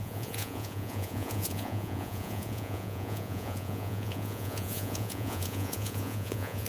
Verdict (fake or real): fake